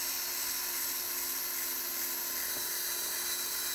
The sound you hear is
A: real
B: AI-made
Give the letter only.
A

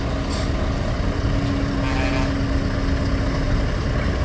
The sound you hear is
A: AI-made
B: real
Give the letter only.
B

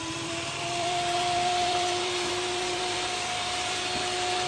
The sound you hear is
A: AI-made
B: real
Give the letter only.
A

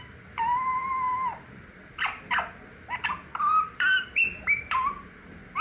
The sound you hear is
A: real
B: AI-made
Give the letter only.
B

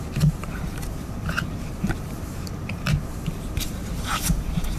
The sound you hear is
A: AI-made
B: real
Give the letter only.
A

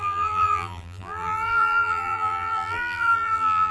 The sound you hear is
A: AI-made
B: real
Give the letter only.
A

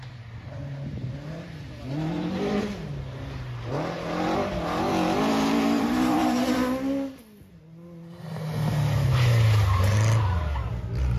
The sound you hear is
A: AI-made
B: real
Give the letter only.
B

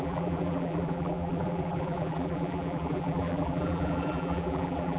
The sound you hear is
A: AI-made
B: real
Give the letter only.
A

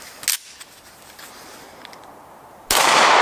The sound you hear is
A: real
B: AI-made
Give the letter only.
A